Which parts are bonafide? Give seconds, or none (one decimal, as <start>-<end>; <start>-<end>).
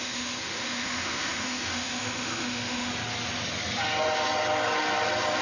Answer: 2.9-5.4